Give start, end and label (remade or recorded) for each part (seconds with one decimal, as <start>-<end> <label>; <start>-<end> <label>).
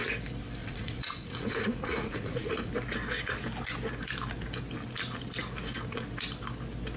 0.0-0.6 recorded; 0.6-2.7 remade; 2.7-7.0 recorded